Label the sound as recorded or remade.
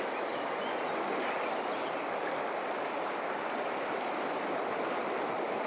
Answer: recorded